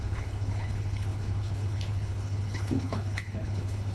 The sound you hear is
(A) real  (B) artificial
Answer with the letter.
B